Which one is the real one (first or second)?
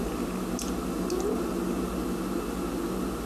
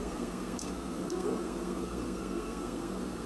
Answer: first